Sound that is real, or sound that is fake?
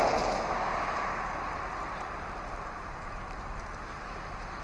real